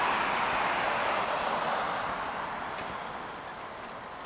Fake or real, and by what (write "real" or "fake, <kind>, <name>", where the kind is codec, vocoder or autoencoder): real